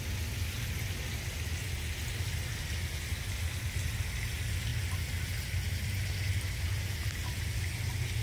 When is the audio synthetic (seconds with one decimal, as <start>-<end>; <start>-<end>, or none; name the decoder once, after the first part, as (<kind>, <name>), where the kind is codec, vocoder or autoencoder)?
none